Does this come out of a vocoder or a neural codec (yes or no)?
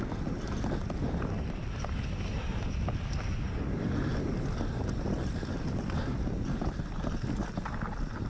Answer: no